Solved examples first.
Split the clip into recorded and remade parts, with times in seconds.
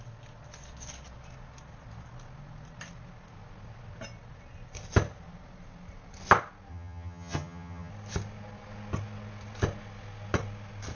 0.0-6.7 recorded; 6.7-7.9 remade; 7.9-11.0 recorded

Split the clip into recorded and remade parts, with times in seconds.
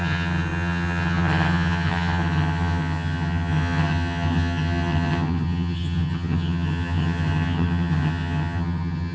0.0-9.1 remade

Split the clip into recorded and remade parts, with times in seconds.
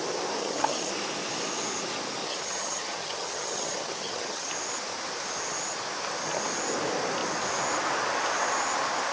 0.0-0.4 recorded; 0.4-0.9 remade; 0.9-2.2 recorded; 2.2-4.5 remade; 4.5-9.1 recorded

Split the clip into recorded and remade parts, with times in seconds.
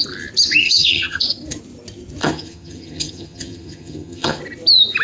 0.0-0.6 recorded; 0.6-1.2 remade; 1.2-2.2 recorded; 2.2-4.4 remade; 4.4-5.0 recorded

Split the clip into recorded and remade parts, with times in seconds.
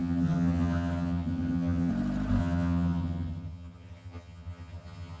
0.0-1.9 remade; 1.9-2.4 recorded; 2.4-5.2 remade